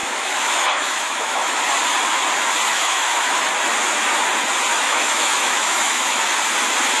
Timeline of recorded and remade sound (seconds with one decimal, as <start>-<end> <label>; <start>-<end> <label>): 0.0-1.6 remade; 1.6-2.7 recorded; 2.7-3.5 remade; 3.5-4.7 recorded; 4.7-6.2 remade; 6.2-7.0 recorded